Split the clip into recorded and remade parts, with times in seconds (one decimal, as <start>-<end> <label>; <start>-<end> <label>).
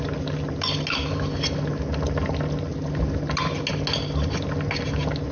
0.0-5.3 recorded